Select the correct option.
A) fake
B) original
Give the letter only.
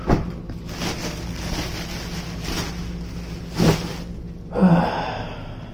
B